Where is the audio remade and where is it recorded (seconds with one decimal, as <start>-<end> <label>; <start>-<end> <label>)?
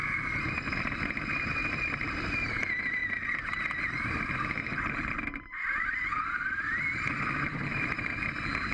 0.0-3.0 recorded; 3.0-8.1 remade; 8.1-8.7 recorded